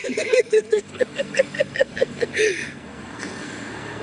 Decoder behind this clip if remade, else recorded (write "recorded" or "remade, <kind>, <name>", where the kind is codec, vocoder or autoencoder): remade, codec, SNAC